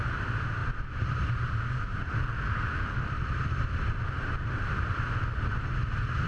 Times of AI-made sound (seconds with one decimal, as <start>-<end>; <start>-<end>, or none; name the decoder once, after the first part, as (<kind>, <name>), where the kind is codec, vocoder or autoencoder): 0.6-1.3 (vocoder, BigVGAN v2); 1.9-5.0